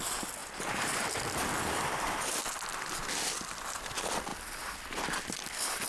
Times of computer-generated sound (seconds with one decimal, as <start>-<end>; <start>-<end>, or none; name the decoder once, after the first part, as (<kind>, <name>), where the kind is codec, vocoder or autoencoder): none